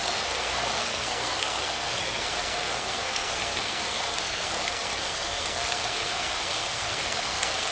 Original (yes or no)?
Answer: no